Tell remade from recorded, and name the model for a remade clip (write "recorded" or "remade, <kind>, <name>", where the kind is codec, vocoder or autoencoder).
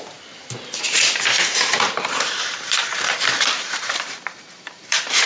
remade, vocoder, BigVGAN v2